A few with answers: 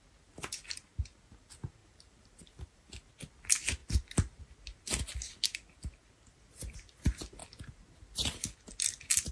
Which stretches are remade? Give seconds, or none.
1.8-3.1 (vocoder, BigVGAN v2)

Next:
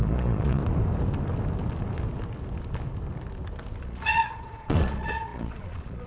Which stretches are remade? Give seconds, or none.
0.0-0.6 (vocoder, Vocos); 3.8-6.1

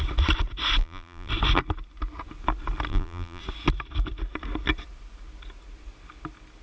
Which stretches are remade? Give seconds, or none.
0.8-1.3 (vocoder, BigVGAN v2); 2.9-3.4

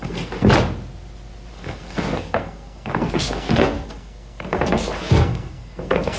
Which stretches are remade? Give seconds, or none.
0.0-0.5 (codec, SNAC); 1.5-6.2

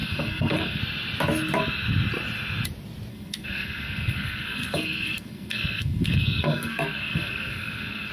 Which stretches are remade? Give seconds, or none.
0.0-0.8 (codec, SNAC); 3.1-8.1

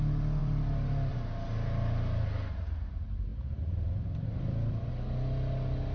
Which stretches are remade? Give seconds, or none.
0.4-1.1 (vocoder, BigVGAN v2); 3.3-4.9

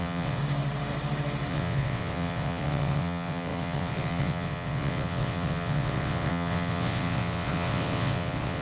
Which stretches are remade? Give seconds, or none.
0.0-0.4 (vocoder, WaveNeXt); 1.5-8.6